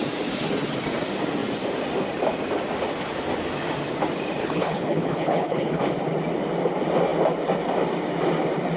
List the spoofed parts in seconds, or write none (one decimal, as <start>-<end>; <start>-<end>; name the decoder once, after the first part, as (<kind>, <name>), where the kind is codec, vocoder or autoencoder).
4.4-5.8 (codec, HILCodec)